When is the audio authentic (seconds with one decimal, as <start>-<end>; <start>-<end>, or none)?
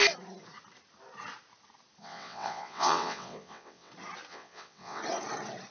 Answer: 0.0-2.0; 3.9-4.3; 5.0-5.7